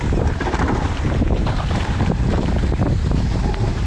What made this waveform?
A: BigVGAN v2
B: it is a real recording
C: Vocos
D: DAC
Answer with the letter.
A